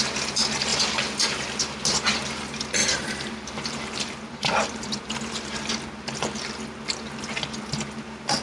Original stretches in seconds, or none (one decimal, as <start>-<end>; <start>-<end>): 0.0-2.8; 5.1-8.4